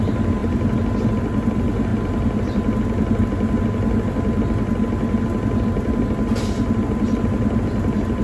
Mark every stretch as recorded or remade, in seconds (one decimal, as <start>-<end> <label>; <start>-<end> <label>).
0.0-8.2 recorded